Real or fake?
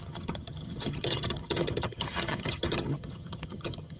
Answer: fake